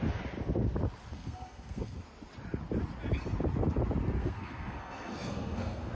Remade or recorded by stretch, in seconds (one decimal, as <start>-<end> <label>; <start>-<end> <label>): 0.0-1.1 recorded; 1.1-2.0 remade; 2.0-4.2 recorded; 4.2-5.9 remade